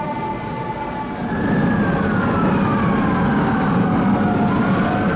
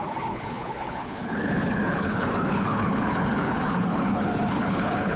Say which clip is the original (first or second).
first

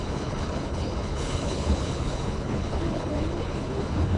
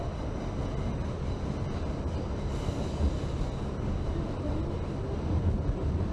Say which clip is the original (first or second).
second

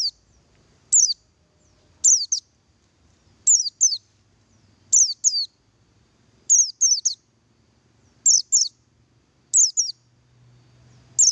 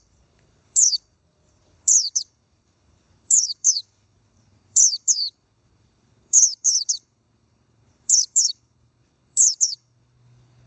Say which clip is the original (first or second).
first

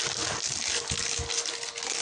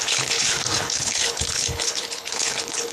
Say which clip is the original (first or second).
first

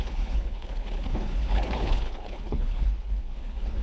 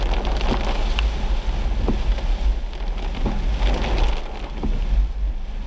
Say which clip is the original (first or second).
second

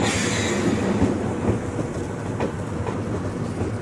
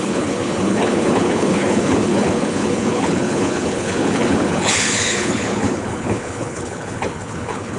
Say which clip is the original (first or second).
first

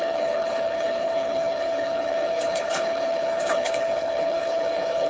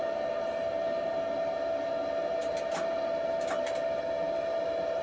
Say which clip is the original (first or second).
second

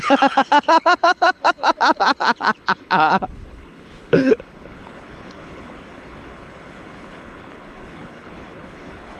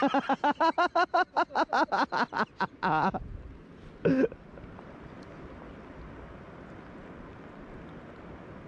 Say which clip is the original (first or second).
second